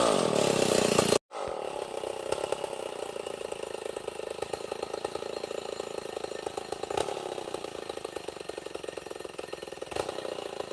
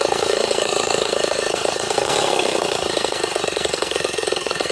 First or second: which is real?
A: first